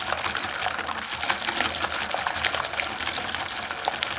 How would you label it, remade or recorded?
recorded